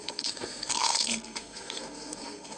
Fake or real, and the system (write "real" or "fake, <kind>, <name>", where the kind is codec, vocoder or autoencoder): fake, codec, SNAC